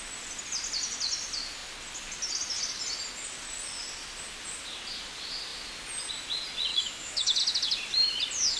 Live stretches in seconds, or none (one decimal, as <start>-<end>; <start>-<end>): 0.0-6.7; 7.4-8.6